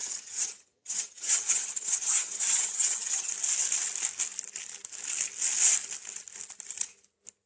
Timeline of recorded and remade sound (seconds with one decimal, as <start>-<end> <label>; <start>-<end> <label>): 0.0-3.3 remade; 3.3-7.5 recorded